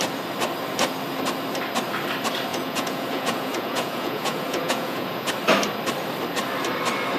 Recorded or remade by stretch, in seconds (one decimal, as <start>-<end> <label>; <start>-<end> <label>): 0.0-2.5 recorded; 2.5-5.3 remade; 5.3-7.2 recorded